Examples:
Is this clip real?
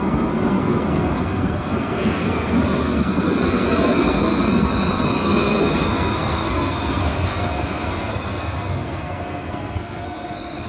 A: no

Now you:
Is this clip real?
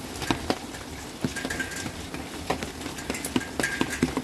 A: yes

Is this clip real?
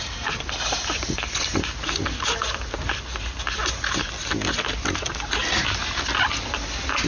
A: yes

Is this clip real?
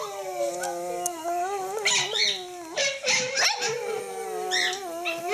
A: yes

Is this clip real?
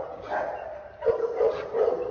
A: no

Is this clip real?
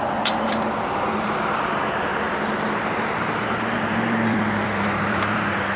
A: no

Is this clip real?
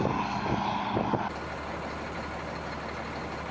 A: yes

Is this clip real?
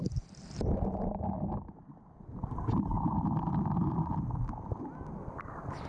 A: yes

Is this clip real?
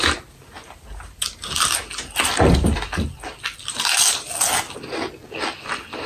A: yes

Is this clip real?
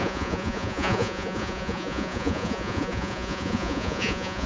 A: no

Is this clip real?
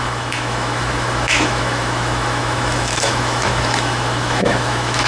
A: no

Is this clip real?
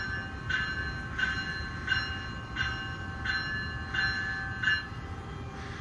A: yes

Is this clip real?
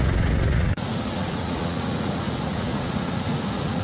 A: no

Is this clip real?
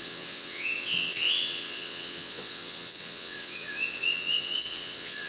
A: no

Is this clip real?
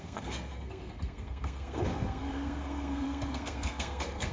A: no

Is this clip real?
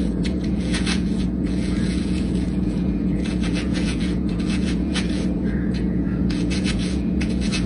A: no